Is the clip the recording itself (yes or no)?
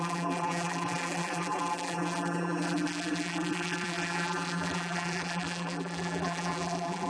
no